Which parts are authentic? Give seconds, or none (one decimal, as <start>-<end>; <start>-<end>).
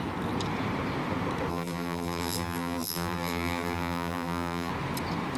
0.0-1.5; 4.7-5.4